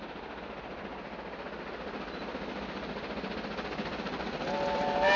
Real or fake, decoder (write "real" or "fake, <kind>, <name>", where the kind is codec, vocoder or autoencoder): real